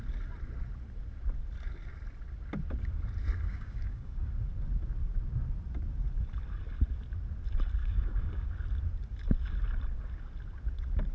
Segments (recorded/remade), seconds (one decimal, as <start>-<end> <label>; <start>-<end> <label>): 0.0-3.5 recorded; 3.5-4.3 remade; 4.3-7.8 recorded; 7.8-8.5 remade; 8.5-11.1 recorded